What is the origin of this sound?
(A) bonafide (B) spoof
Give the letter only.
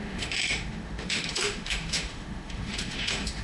B